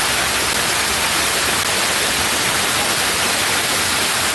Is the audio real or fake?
real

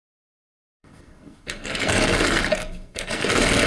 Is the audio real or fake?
fake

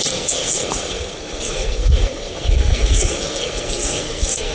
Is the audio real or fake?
fake